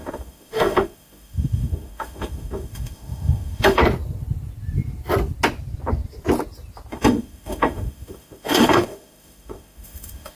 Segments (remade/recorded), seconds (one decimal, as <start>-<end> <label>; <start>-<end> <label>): 0.0-3.8 remade; 3.8-6.9 recorded; 6.9-10.3 remade